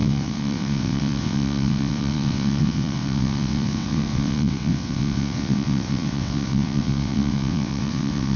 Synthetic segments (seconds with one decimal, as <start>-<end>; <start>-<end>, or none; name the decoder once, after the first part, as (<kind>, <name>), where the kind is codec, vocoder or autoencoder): 0.0-8.4 (vocoder, WaveNeXt)